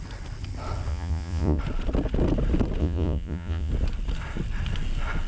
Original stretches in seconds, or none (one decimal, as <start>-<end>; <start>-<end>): 0.0-0.9; 1.6-2.8; 3.7-5.3